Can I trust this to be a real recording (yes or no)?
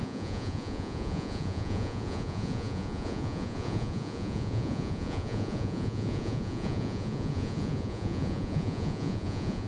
no